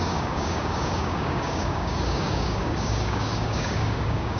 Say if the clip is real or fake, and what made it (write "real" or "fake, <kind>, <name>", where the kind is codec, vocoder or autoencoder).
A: fake, codec, DAC